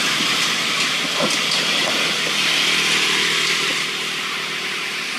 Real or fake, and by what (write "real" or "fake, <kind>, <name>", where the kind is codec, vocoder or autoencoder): real